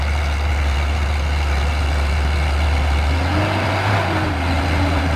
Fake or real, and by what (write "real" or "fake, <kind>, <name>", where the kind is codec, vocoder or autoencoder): real